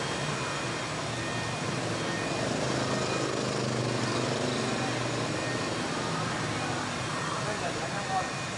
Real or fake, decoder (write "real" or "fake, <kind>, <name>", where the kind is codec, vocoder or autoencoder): real